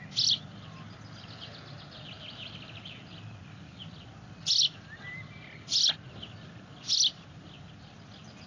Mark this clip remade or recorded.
recorded